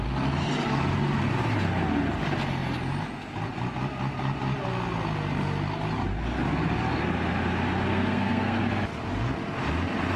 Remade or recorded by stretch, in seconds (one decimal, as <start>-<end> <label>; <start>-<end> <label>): 0.0-7.9 recorded; 7.9-8.6 remade; 8.6-10.2 recorded